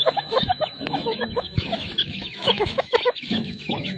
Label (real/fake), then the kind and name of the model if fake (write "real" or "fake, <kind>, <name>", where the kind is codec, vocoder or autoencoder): fake, autoencoder, DAC-VAE